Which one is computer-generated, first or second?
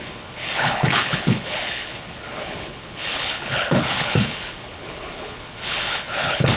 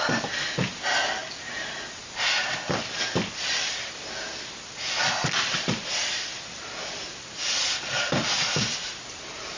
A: first